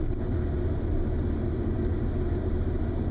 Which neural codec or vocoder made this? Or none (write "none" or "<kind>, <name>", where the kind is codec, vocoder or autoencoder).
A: none